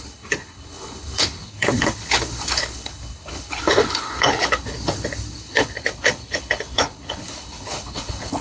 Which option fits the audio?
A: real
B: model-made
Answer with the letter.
B